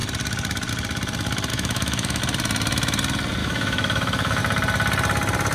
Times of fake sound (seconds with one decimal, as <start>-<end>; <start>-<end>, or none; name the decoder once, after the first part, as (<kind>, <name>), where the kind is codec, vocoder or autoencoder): 1.5-2.2 (autoencoder, DAC-VAE); 3.4-4.4